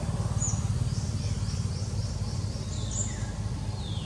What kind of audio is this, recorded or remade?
recorded